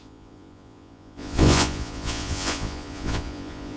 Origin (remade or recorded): remade